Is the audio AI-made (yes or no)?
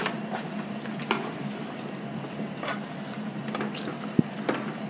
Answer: no